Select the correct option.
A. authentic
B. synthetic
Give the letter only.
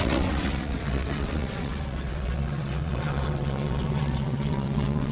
B